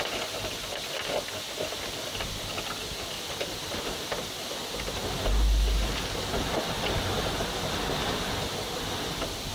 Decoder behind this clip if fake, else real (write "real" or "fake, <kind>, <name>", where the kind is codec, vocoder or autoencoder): real